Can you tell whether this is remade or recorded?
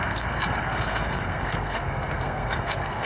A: remade